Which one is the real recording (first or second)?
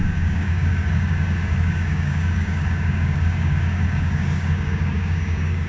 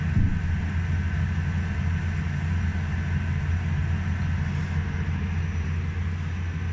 second